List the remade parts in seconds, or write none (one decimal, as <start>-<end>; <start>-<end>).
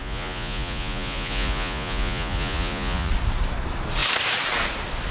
0.0-3.1